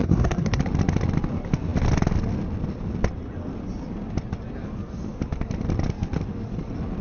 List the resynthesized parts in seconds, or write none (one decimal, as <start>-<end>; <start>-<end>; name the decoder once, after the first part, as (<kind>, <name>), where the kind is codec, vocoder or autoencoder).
0.0-0.6 (codec, SNAC)